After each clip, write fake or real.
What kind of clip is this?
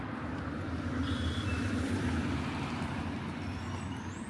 real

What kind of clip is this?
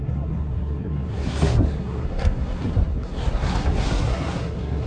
fake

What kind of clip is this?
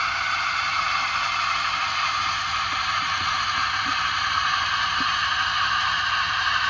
fake